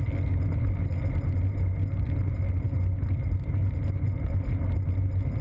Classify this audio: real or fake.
real